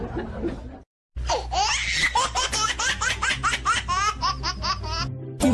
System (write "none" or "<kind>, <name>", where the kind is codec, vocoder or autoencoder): none